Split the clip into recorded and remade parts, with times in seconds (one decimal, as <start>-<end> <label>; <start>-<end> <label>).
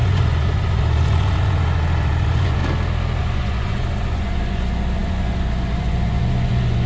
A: 0.0-2.6 remade; 2.6-3.2 recorded; 3.2-6.9 remade